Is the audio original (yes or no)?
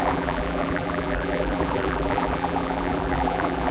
no